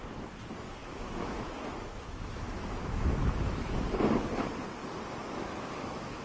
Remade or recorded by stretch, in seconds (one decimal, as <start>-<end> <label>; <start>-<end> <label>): 0.0-0.8 recorded; 0.8-3.9 remade; 3.9-5.2 recorded; 5.2-6.2 remade